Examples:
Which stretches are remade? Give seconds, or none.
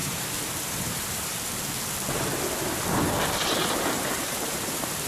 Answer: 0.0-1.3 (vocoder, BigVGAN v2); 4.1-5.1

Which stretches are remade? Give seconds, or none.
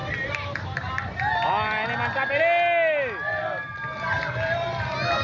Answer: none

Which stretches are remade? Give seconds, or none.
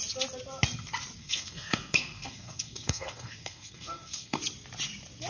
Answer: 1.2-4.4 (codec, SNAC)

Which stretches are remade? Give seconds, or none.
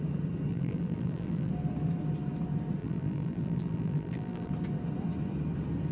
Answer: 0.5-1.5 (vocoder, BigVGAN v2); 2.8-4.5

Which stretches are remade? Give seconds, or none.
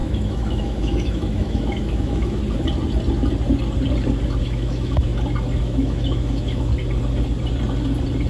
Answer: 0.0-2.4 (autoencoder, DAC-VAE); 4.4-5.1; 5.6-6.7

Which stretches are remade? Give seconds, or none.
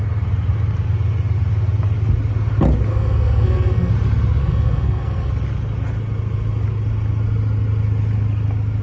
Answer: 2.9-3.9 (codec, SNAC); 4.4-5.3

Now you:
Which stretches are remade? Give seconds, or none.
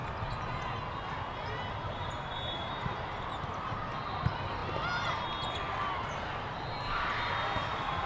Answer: none